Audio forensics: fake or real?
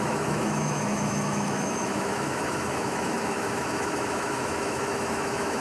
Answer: fake